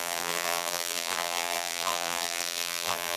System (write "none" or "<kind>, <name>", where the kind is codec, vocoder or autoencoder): vocoder, BigVGAN v2